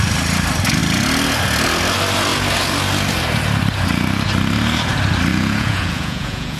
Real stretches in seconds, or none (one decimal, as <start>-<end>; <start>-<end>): 0.0-5.3